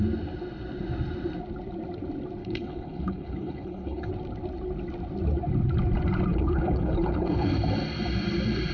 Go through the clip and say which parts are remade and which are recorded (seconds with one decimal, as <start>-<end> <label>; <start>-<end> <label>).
0.0-2.4 recorded; 2.4-4.1 remade; 4.1-6.3 recorded; 6.3-7.5 remade; 7.5-8.7 recorded